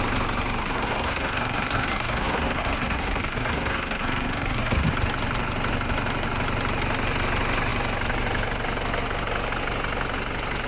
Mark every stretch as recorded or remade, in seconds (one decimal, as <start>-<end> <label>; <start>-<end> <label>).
0.0-0.6 recorded; 0.6-4.9 remade; 4.9-10.7 recorded